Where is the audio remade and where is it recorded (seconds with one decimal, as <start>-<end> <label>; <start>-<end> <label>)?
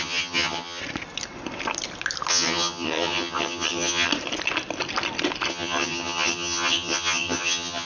0.0-0.8 remade; 0.8-2.3 recorded; 2.3-4.1 remade; 4.1-5.5 recorded; 5.5-7.8 remade